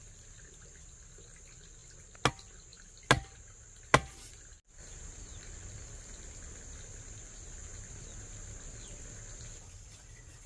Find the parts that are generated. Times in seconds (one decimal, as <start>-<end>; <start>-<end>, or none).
none